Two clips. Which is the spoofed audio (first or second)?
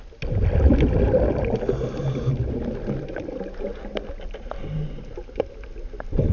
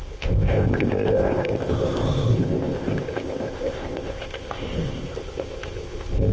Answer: second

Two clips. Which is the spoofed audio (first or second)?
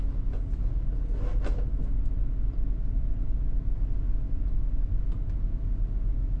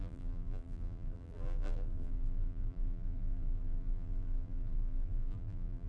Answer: second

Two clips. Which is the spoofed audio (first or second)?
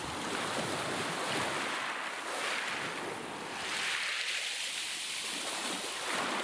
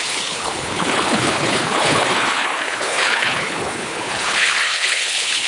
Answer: second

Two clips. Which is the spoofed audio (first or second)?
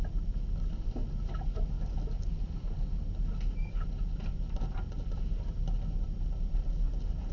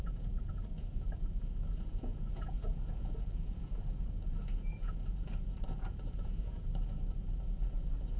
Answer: second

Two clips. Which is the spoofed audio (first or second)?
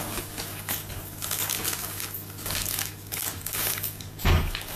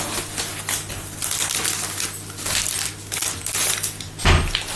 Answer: first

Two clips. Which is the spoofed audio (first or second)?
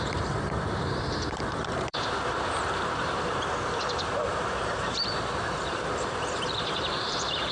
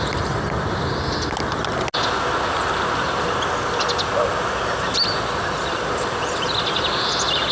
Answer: first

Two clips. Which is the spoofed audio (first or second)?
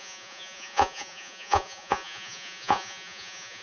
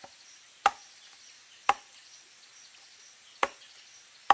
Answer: first